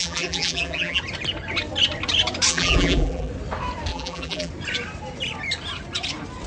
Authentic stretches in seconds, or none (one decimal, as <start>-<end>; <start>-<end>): 1.0-2.5; 3.3-3.9; 4.5-6.5